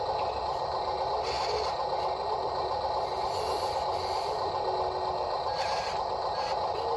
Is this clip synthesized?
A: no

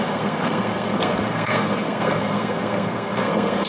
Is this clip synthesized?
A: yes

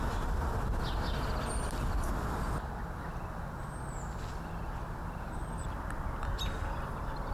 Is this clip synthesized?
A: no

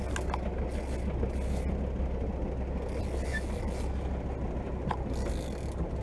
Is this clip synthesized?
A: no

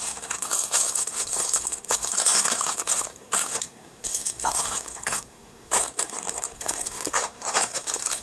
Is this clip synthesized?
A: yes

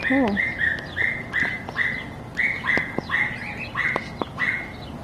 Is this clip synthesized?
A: no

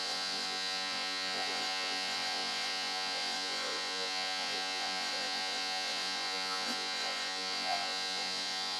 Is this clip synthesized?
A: yes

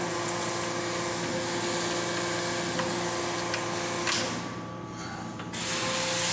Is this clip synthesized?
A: no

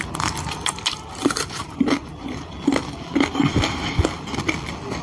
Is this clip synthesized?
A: no